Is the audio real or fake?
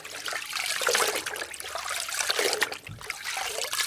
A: real